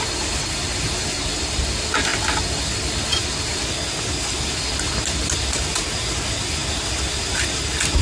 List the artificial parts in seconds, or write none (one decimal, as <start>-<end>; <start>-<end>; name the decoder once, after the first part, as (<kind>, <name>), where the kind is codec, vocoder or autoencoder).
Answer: none